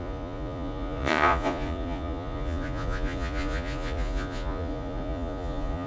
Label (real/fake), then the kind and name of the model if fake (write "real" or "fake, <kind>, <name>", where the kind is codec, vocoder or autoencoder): fake, vocoder, Vocos